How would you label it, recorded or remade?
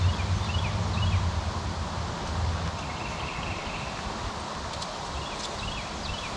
recorded